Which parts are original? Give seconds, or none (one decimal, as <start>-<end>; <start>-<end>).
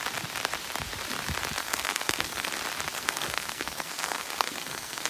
0.0-1.6; 2.5-2.9